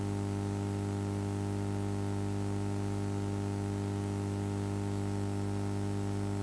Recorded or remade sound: recorded